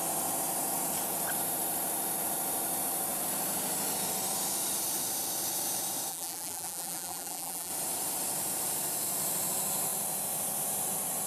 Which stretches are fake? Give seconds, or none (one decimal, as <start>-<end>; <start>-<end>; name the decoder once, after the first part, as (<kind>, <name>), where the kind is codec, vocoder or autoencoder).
6.1-7.7 (vocoder, BigVGAN v2)